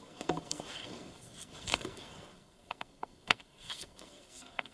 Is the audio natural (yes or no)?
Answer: no